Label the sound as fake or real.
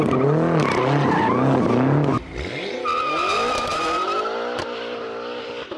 real